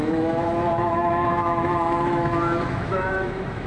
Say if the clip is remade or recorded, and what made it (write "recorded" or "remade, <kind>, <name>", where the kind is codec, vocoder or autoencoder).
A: remade, autoencoder, DAC-VAE